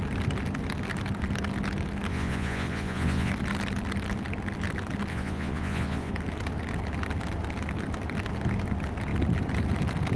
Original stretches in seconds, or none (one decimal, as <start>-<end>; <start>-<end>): 0.0-2.1; 3.3-5.1; 6.1-10.2